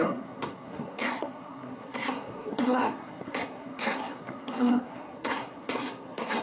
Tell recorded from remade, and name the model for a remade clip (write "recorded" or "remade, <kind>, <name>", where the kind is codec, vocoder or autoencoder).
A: remade, codec, SNAC